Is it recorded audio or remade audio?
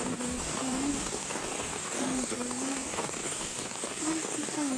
remade